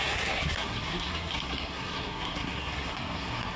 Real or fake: fake